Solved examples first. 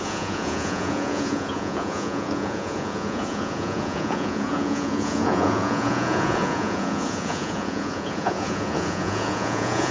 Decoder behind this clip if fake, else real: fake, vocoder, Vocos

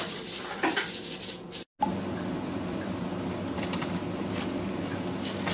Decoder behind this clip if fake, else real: real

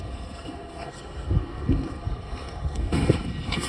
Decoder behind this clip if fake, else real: fake, codec, SNAC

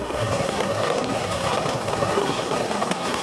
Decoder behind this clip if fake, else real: fake, codec, SNAC